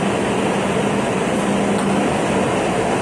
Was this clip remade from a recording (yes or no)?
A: no